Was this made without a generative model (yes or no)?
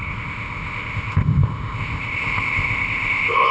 no